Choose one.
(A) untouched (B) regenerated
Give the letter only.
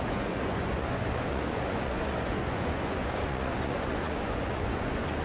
B